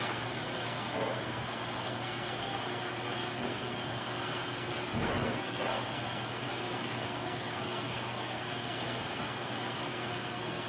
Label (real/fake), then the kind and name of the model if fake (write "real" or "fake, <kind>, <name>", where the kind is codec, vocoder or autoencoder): fake, codec, SNAC